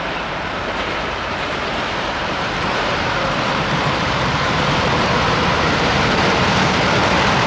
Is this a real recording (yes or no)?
no